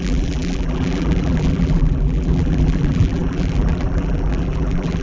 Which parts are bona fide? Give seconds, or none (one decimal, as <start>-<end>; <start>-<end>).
none